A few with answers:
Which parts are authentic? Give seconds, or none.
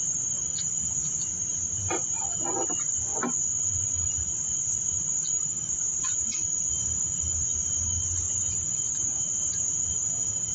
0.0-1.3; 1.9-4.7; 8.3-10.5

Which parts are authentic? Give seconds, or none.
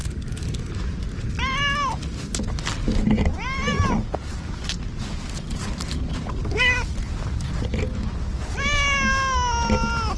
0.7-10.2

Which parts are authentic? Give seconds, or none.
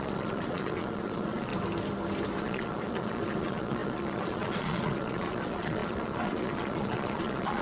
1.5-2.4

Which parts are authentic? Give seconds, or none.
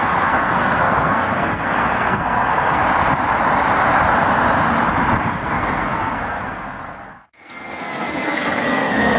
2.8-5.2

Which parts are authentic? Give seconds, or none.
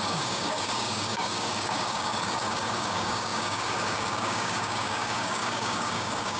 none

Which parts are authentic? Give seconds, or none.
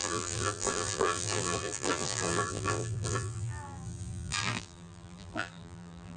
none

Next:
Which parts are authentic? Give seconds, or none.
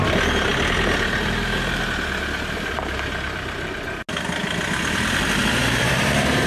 0.0-5.4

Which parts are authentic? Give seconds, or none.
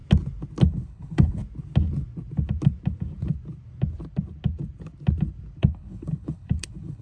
0.0-0.6; 1.4-5.6